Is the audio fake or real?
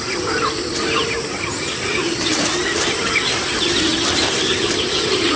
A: fake